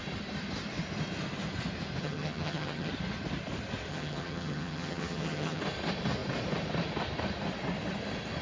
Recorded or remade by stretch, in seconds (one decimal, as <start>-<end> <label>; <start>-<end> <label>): 0.0-2.0 recorded; 2.0-2.9 remade; 2.9-3.9 recorded; 3.9-5.6 remade; 5.6-8.4 recorded